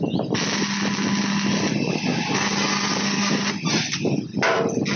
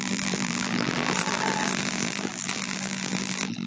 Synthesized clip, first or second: second